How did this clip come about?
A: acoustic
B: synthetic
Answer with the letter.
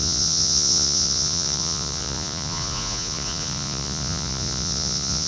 B